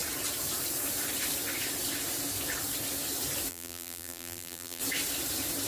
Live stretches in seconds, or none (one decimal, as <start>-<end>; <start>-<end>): 0.0-3.5; 4.8-5.7

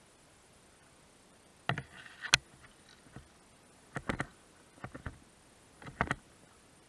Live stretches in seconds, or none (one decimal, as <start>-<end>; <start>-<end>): 0.0-6.9

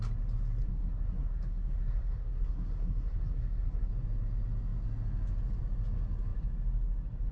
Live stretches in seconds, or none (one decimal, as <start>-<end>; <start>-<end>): 0.0-0.6; 3.9-7.3

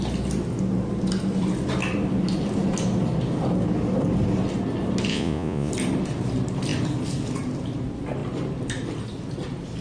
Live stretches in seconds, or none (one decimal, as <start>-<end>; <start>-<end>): 0.0-5.1; 5.7-9.8

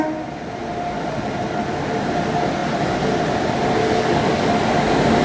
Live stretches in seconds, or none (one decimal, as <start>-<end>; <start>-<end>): 0.0-3.8; 4.5-5.2

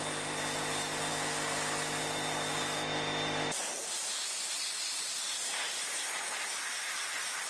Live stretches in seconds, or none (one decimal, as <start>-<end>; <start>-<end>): 0.0-7.5

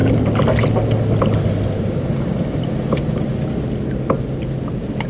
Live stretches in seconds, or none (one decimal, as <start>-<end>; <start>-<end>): 0.0-5.1